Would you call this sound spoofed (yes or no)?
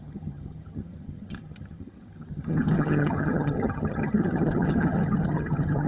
yes